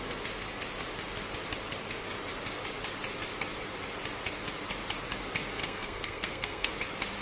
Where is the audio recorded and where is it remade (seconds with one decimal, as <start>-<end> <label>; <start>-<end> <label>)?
0.0-5.6 recorded; 5.6-6.7 remade; 6.7-7.2 recorded